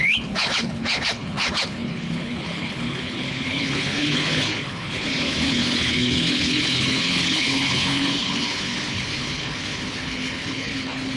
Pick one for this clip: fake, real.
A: fake